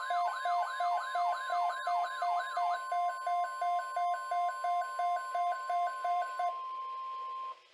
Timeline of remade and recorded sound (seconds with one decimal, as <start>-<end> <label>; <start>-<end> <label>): 0.0-5.3 recorded; 5.3-6.8 remade; 6.8-7.7 recorded